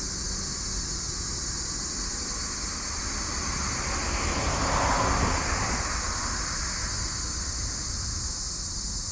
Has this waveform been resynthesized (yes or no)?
no